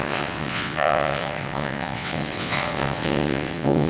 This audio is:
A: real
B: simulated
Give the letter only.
B